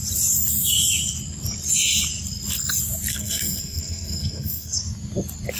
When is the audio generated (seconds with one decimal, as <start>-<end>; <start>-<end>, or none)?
3.1-4.8